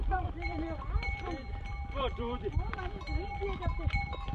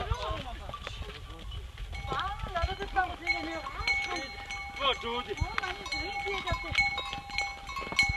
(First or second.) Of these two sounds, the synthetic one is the first